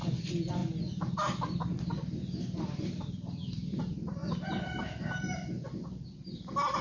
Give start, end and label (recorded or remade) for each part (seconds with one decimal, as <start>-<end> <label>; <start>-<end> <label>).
0.0-4.2 remade; 4.2-5.2 recorded; 5.2-6.8 remade